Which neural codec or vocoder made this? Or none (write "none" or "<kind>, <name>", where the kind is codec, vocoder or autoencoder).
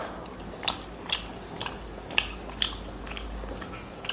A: none